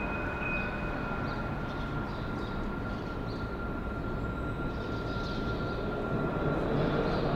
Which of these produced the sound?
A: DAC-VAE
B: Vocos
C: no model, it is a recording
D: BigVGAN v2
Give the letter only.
C